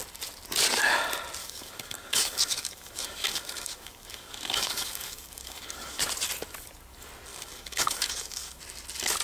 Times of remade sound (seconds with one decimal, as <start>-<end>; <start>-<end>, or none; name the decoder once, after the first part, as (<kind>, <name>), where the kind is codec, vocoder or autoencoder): 1.4-6.0 (codec, DAC); 7.3-8.6